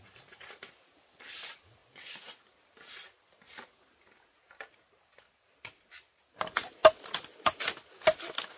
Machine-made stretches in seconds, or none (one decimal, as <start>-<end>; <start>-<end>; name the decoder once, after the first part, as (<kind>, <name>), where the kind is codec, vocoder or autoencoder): none